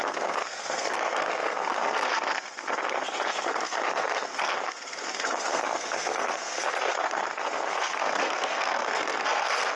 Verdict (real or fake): fake